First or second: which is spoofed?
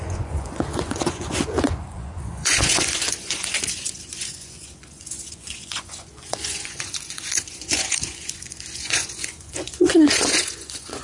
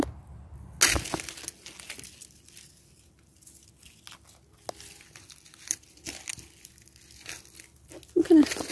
first